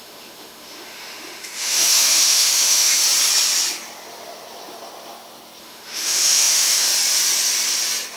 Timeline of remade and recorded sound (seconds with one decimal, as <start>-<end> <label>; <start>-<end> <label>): 0.0-3.0 remade; 3.0-5.6 recorded; 5.6-6.9 remade; 6.9-8.2 recorded